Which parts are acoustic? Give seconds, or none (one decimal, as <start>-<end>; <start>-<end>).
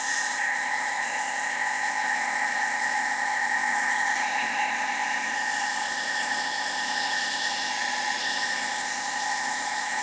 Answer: 7.7-8.2